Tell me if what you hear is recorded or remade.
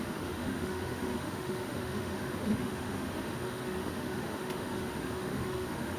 remade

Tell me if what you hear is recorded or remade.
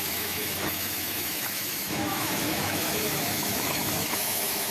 remade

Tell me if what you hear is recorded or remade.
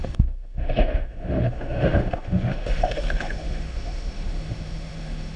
remade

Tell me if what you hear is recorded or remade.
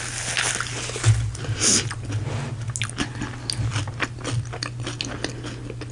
recorded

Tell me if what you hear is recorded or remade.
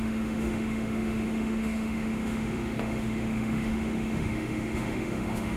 remade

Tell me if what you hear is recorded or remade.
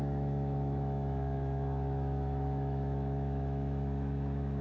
remade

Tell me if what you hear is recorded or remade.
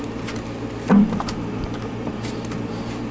recorded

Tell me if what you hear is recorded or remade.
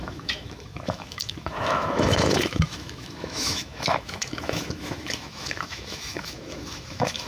remade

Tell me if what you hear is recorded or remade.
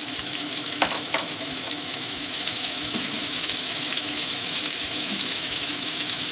remade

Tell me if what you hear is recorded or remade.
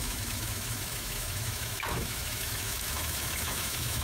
remade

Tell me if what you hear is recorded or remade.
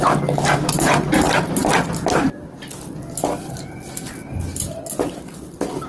recorded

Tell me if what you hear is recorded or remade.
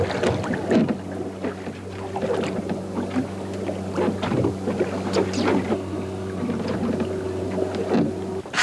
recorded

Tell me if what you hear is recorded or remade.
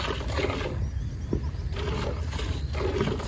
recorded